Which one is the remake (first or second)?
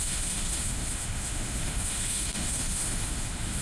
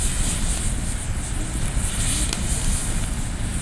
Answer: first